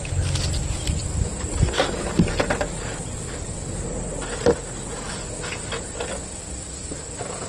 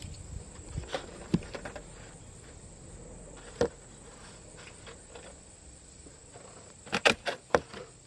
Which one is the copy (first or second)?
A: second